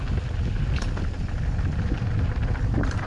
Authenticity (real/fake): real